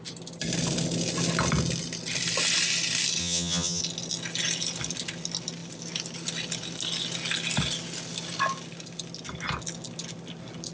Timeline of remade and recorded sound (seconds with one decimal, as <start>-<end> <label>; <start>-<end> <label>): 0.0-3.2 recorded; 3.2-3.8 remade; 3.8-10.7 recorded